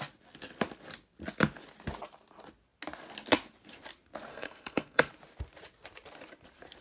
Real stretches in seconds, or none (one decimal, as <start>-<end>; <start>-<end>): 0.0-4.3; 5.1-6.8